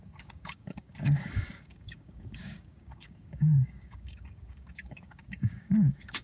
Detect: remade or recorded remade